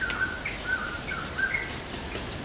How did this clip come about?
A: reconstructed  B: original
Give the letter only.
B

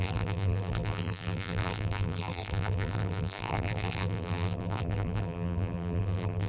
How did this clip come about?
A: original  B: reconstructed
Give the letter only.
B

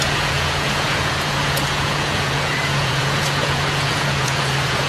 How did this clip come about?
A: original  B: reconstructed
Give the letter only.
B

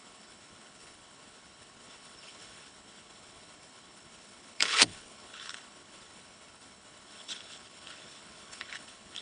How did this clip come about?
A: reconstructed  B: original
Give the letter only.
A